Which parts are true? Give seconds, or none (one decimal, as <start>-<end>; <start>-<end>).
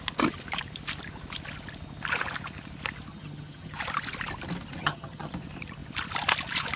0.0-3.1; 3.8-4.8; 5.3-6.8